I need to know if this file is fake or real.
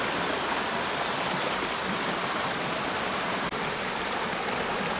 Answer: real